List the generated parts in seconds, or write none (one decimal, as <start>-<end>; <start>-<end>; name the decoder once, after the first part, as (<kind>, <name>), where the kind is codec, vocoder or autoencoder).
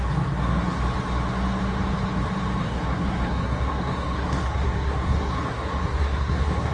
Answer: 0.0-0.8 (codec, SNAC); 2.6-6.7